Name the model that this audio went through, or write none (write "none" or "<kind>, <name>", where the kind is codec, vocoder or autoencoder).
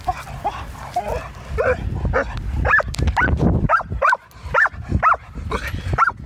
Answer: none